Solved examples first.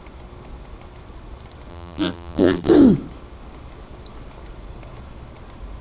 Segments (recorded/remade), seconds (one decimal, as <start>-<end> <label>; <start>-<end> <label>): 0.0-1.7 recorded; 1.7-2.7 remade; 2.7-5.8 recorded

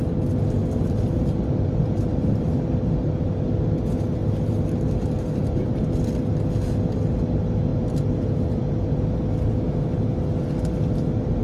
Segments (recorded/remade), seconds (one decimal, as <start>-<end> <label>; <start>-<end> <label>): 0.0-0.6 recorded; 0.6-2.9 remade; 2.9-11.4 recorded

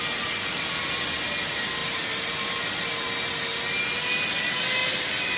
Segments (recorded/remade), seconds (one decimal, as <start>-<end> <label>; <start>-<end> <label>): 0.0-1.8 recorded; 1.8-2.6 remade; 2.6-4.8 recorded; 4.8-5.4 remade

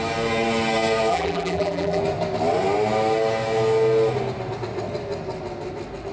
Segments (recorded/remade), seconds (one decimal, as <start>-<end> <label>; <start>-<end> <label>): 0.0-1.1 recorded; 1.1-2.0 remade; 2.0-6.1 recorded